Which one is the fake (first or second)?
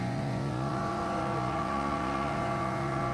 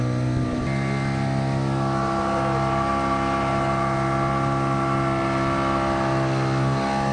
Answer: first